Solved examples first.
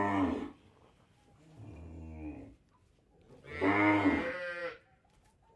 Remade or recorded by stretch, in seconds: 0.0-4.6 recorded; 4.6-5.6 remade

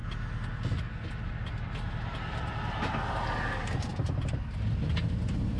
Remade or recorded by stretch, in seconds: 0.0-5.6 recorded

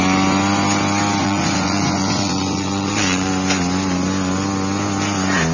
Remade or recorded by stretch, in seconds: 0.0-1.2 recorded; 1.2-3.3 remade; 3.3-5.5 recorded

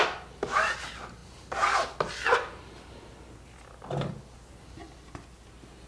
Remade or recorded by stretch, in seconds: 0.0-5.9 recorded

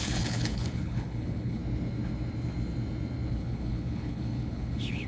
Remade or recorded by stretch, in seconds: 0.0-1.6 remade; 1.6-3.3 recorded; 3.3-5.1 remade

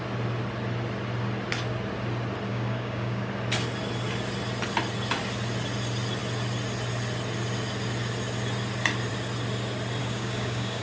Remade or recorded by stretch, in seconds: 0.0-2.5 recorded; 2.5-3.3 remade; 3.3-10.0 recorded; 10.0-10.8 remade

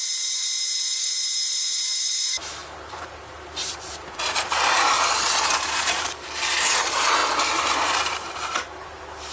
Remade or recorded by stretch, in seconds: 0.0-9.3 remade

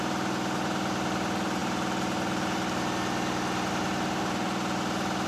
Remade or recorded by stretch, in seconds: 0.0-5.3 recorded